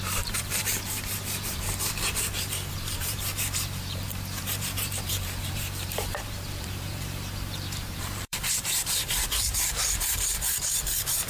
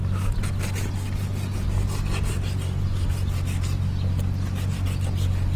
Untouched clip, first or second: second